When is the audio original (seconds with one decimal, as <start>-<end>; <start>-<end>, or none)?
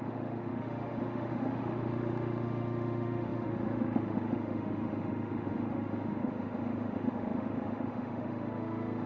none